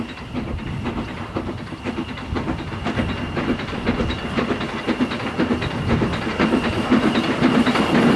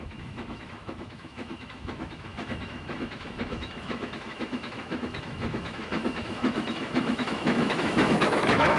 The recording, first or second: first